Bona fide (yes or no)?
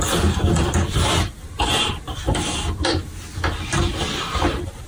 yes